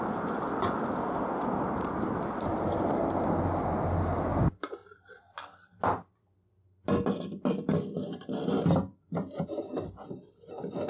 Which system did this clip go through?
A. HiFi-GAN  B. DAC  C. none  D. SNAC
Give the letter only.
C